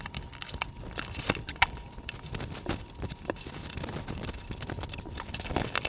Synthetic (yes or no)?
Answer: no